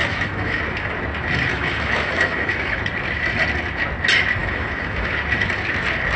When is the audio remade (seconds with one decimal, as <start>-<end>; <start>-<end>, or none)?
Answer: 0.0-0.6; 1.5-2.8; 4.4-5.1

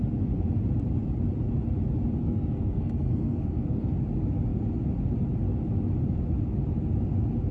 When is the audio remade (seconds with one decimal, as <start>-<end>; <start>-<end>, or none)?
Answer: 2.2-3.8

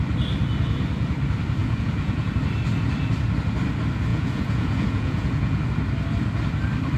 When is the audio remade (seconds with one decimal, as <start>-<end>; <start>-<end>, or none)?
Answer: 1.6-2.3; 4.1-5.6

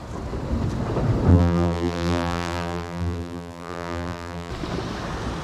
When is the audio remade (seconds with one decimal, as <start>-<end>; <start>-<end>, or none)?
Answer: 1.3-4.5

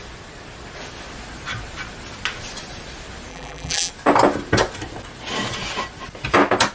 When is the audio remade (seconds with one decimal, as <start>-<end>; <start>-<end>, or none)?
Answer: 3.3-3.9